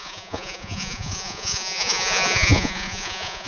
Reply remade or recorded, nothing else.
remade